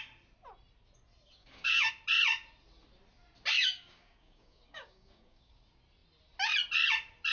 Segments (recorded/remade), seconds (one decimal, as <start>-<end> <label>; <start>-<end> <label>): 0.0-1.4 recorded; 1.4-1.9 remade; 1.9-3.6 recorded; 3.6-5.5 remade; 5.5-7.3 recorded